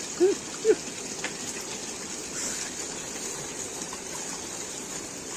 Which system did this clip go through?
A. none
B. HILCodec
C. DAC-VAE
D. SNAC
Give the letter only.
A